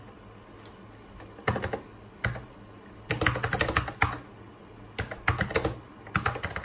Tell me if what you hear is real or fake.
real